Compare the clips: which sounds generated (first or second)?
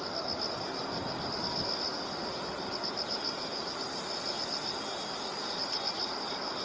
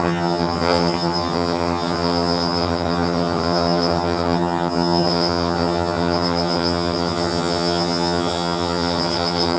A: second